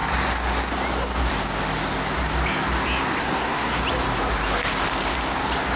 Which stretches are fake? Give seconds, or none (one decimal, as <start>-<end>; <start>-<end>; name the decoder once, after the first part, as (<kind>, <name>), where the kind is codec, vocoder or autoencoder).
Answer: 3.2-3.8 (codec, SNAC)